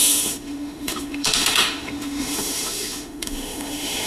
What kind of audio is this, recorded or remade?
remade